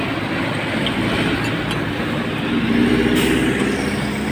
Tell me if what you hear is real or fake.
real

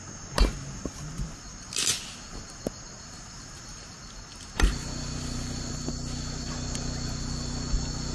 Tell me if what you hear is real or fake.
real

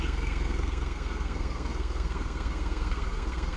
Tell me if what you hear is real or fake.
fake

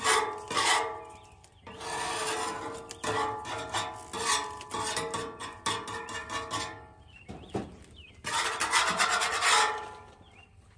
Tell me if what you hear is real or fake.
real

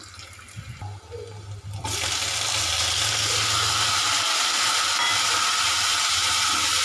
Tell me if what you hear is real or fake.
real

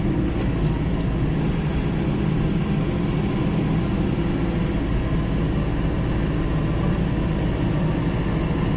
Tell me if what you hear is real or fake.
real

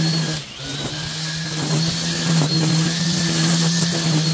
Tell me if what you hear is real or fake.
real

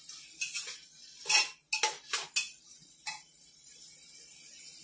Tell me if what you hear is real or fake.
real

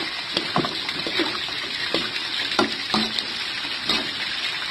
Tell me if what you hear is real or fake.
real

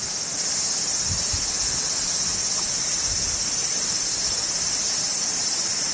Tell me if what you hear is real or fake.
real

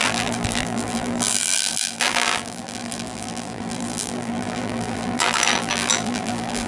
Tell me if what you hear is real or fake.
fake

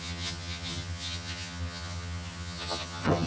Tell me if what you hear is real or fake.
fake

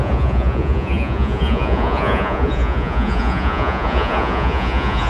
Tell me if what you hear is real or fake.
fake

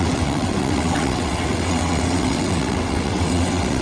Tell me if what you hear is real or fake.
fake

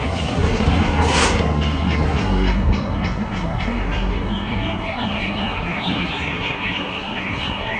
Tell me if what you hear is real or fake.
fake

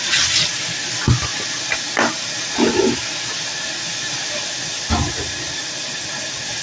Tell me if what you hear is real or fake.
real